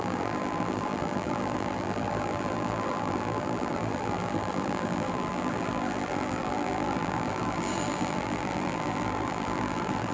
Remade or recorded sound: remade